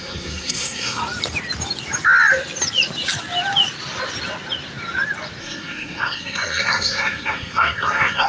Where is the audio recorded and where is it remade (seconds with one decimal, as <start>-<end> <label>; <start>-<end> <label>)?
0.0-1.0 remade; 1.0-5.4 recorded; 5.4-8.3 remade